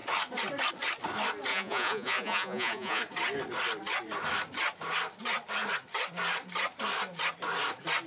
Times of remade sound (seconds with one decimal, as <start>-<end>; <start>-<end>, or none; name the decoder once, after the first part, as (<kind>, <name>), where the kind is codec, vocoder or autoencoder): 1.5-3.0 (vocoder, Vocos)